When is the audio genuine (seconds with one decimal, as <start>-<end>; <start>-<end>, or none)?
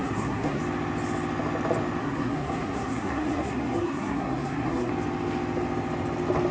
0.6-2.0; 4.9-6.5